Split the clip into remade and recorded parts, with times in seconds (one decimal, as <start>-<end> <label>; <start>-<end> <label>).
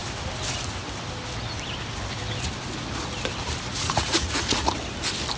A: 0.0-3.7 recorded; 3.7-4.7 remade; 4.7-5.4 recorded